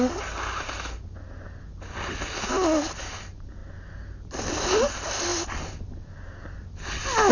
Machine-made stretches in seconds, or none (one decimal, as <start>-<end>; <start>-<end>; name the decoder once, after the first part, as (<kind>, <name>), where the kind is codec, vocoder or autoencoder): none